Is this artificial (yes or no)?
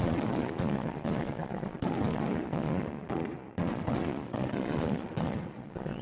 yes